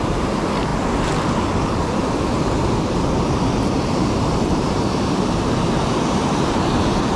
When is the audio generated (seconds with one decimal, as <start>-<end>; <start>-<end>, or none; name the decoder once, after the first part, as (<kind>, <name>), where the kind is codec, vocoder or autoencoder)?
0.0-0.7 (vocoder, BigVGAN v2); 3.3-7.2